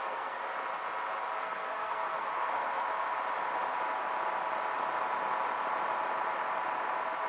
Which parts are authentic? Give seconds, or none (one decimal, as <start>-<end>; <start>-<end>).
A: 0.4-1.4; 2.8-7.3